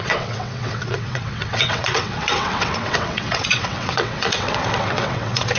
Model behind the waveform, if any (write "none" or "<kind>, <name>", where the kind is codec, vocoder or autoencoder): vocoder, WaveNeXt